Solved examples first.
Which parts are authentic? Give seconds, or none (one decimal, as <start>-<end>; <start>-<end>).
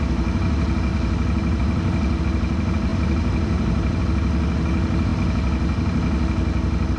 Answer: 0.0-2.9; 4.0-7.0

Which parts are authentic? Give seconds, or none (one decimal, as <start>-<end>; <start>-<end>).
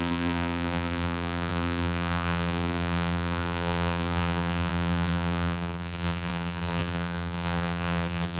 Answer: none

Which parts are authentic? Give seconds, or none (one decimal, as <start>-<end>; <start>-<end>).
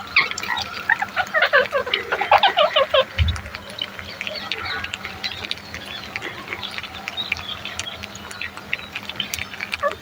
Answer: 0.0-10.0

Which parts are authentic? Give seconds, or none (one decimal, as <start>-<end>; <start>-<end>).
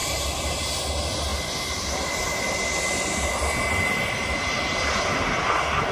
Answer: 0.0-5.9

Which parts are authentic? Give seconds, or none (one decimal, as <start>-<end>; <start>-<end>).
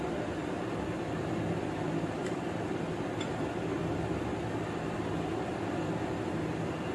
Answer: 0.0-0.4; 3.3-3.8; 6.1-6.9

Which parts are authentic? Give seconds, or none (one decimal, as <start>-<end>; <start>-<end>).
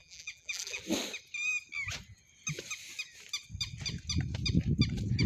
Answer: 0.8-5.3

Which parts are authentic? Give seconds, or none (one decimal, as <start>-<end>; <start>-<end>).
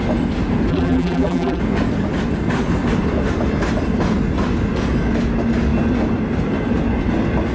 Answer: 0.0-0.7; 1.6-7.5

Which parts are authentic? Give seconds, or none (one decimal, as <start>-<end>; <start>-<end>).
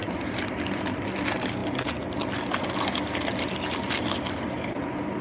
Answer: 0.0-5.2